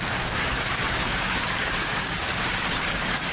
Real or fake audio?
fake